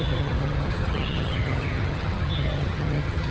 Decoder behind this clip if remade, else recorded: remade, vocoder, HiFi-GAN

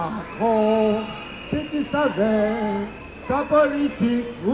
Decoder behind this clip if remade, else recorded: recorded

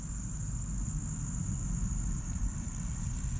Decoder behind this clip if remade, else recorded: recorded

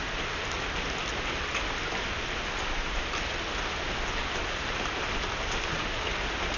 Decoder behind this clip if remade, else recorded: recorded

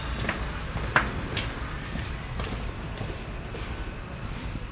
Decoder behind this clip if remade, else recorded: recorded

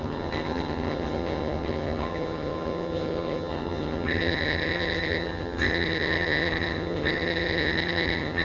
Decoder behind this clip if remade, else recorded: remade, vocoder, HiFi-GAN